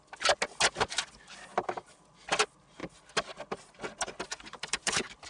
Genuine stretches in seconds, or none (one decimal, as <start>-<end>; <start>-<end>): 0.0-4.3